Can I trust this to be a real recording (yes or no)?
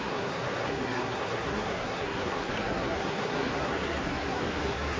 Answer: no